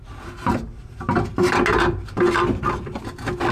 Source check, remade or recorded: recorded